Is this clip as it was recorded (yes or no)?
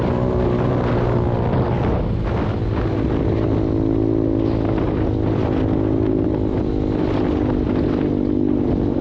yes